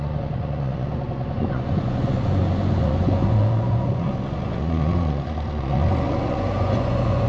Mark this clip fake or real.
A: fake